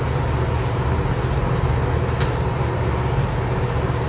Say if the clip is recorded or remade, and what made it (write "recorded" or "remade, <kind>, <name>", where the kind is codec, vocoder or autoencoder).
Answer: recorded